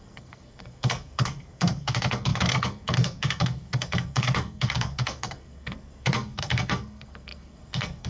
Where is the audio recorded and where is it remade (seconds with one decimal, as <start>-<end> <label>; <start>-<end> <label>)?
0.0-8.1 remade